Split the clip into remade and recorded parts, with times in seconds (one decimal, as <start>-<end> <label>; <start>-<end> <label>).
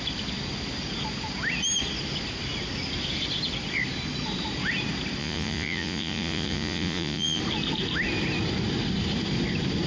0.0-5.2 recorded; 5.2-7.4 remade; 7.4-9.9 recorded